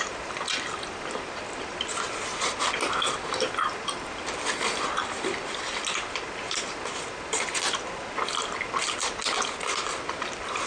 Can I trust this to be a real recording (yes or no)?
yes